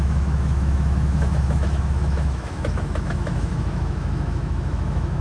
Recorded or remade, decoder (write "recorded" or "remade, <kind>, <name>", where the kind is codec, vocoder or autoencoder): remade, autoencoder, DAC-VAE